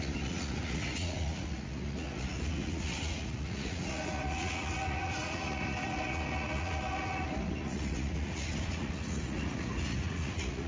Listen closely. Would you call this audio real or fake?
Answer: fake